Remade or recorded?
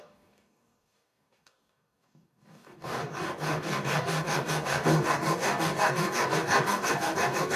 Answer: remade